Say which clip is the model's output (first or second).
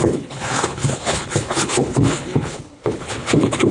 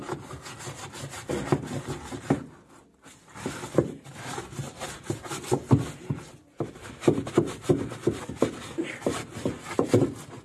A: first